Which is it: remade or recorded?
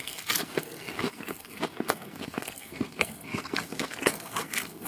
remade